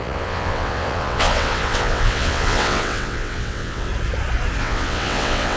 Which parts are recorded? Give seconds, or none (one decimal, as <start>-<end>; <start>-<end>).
3.9-4.6